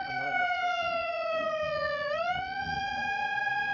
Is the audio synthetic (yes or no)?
yes